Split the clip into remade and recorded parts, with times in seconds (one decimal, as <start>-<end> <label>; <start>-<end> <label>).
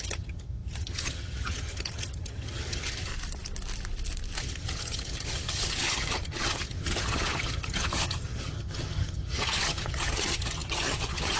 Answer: 0.0-3.1 remade; 3.1-4.4 recorded; 4.4-11.4 remade